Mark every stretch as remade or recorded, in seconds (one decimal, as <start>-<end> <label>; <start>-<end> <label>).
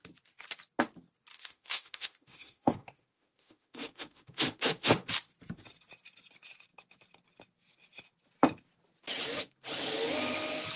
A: 0.0-1.3 recorded; 1.3-5.1 remade; 5.1-10.8 recorded